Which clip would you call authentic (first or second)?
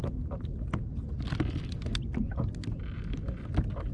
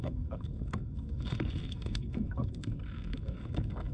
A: first